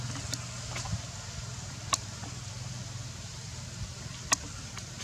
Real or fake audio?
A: real